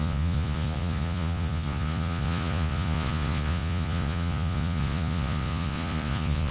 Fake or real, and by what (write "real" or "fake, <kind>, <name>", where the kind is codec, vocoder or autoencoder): fake, vocoder, Vocos